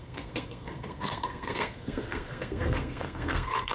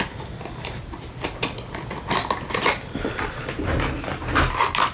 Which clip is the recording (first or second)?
second